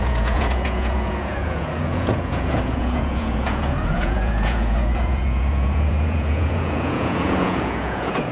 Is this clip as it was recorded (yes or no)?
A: no